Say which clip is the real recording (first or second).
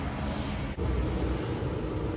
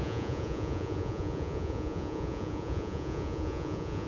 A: first